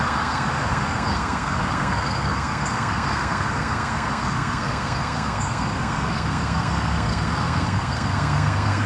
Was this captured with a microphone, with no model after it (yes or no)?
no